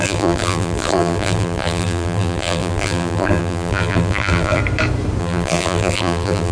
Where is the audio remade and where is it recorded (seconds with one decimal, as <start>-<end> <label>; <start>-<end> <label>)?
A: 0.0-4.6 remade; 4.6-5.2 recorded; 5.2-6.5 remade